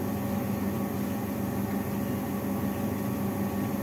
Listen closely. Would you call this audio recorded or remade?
recorded